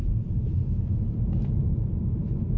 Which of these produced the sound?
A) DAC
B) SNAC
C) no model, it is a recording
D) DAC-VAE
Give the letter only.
C